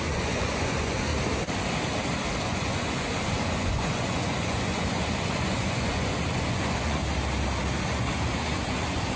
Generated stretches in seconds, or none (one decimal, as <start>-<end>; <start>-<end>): 0.0-1.1; 2.4-7.0; 7.8-9.2